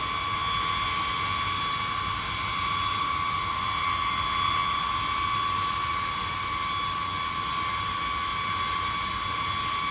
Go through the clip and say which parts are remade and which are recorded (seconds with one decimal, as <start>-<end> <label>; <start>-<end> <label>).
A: 0.0-9.9 recorded